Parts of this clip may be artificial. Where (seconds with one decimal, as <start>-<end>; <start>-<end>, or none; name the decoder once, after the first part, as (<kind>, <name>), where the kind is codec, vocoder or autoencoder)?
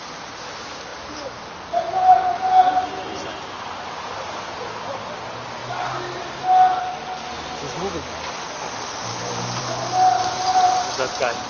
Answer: none